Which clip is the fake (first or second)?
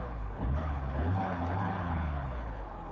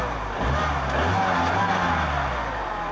first